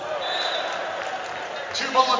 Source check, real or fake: real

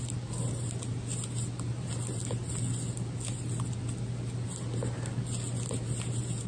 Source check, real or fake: real